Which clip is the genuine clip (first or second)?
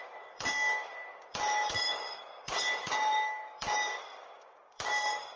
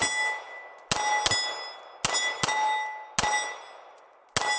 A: second